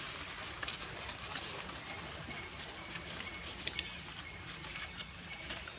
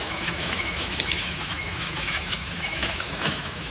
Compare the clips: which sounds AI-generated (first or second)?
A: second